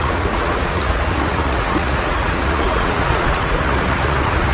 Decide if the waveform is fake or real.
fake